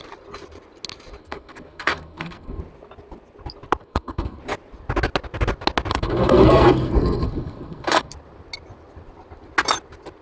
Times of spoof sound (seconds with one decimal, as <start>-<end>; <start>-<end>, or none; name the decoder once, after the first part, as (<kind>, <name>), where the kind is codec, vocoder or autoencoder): 1.2-2.6 (codec, SNAC); 3.8-4.4; 5.9-8.1